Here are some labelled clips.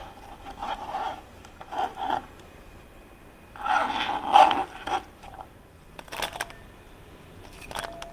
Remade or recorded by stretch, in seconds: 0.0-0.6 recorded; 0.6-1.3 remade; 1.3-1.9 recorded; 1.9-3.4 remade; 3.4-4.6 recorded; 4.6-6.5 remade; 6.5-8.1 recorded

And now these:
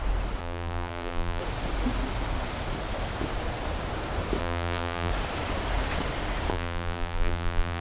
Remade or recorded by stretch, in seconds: 0.0-0.4 recorded; 0.4-1.4 remade; 1.4-4.4 recorded; 4.4-5.1 remade; 5.1-6.5 recorded; 6.5-7.8 remade

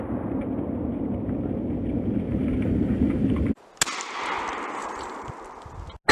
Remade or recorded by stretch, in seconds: 0.0-2.3 recorded; 2.3-3.6 remade; 3.6-4.8 recorded; 4.8-5.3 remade; 5.3-6.1 recorded

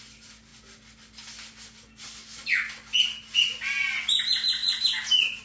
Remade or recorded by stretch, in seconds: 0.0-5.4 recorded

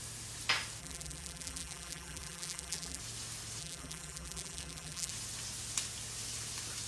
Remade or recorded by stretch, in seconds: 0.0-0.8 recorded; 0.8-3.0 remade; 3.0-3.6 recorded; 3.6-5.1 remade; 5.1-6.9 recorded

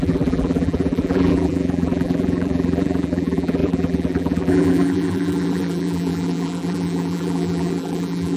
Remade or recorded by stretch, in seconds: 0.0-8.4 remade

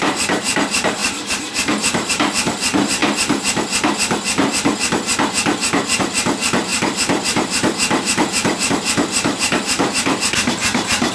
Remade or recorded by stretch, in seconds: 0.0-3.0 remade; 3.0-6.0 recorded; 6.0-11.1 remade